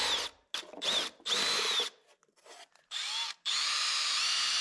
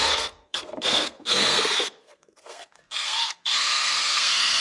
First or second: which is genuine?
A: first